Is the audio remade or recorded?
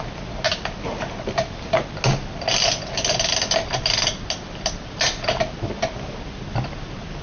recorded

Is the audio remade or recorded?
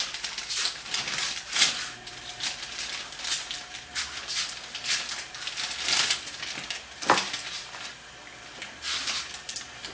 recorded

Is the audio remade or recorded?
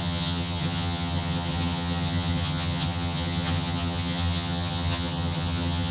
remade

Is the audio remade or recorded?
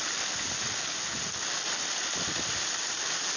recorded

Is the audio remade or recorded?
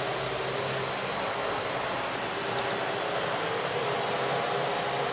recorded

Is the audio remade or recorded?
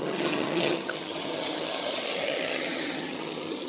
remade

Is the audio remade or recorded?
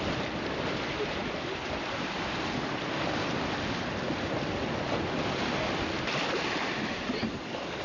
recorded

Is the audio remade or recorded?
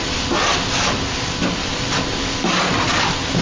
recorded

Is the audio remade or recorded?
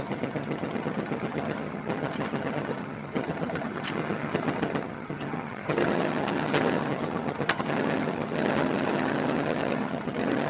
remade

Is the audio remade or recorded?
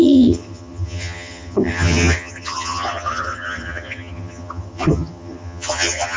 remade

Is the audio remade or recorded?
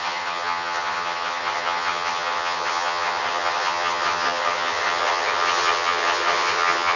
remade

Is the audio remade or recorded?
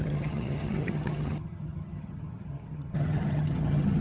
remade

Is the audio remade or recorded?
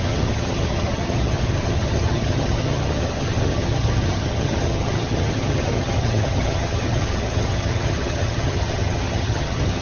remade